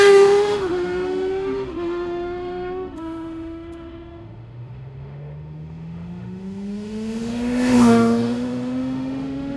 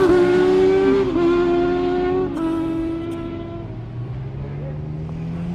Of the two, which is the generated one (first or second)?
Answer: first